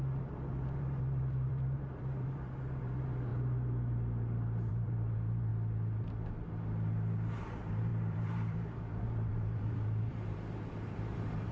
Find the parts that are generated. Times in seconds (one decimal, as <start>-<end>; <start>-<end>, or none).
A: 0.0-3.3; 4.7-5.5; 7.4-11.5

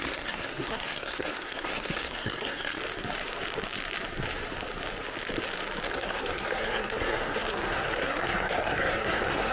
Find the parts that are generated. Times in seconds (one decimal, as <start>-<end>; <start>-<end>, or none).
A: 0.0-2.8; 5.9-9.5

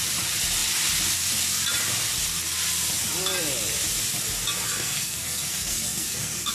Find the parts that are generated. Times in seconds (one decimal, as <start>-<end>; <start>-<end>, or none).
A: 4.6-6.5

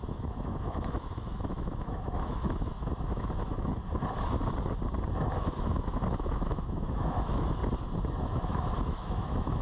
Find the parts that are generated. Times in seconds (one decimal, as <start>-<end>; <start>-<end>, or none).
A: 0.0-3.8; 5.3-7.6; 8.2-9.6

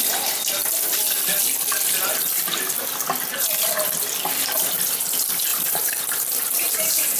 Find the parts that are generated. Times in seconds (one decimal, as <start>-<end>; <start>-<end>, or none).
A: 5.5-7.2

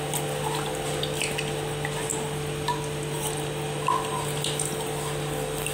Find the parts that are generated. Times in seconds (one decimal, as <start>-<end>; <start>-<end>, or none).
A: none

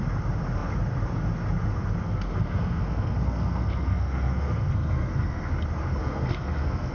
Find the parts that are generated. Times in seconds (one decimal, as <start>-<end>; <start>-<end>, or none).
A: 2.0-5.5; 6.0-6.9

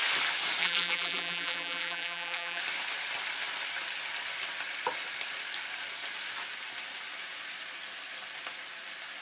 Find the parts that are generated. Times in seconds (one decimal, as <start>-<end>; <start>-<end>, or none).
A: 0.6-2.6